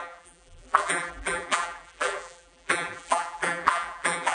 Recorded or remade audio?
remade